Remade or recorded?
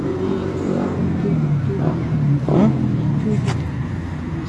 recorded